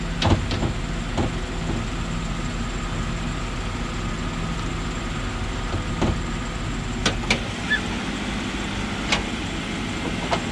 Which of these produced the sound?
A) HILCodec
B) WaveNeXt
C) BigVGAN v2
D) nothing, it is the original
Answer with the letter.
D